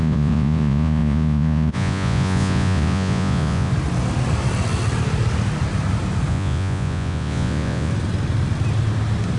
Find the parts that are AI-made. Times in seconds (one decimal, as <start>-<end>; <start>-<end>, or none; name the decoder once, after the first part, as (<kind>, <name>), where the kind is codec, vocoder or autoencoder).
0.0-3.7 (vocoder, Vocos); 6.3-7.9